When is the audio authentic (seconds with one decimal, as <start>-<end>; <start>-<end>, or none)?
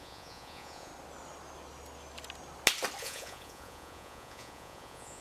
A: 0.9-3.0